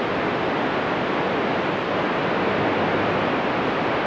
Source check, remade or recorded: recorded